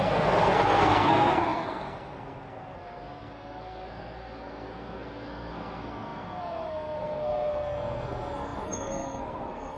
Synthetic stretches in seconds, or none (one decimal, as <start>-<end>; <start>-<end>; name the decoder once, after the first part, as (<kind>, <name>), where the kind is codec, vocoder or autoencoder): 0.0-9.8 (codec, SNAC)